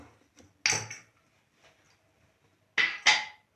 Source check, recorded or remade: recorded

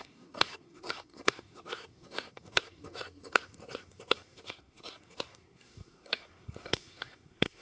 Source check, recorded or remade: remade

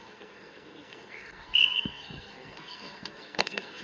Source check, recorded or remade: remade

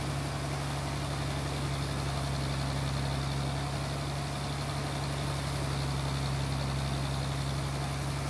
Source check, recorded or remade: recorded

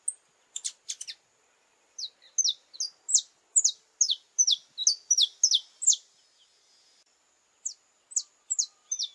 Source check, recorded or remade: recorded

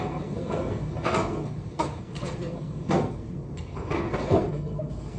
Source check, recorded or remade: remade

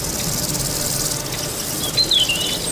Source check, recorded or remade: recorded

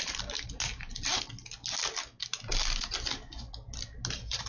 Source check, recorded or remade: recorded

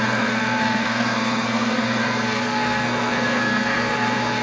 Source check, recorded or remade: remade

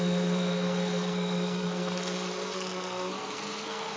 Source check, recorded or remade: remade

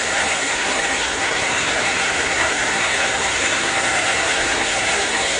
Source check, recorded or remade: remade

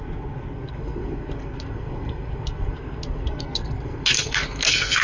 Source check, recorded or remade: remade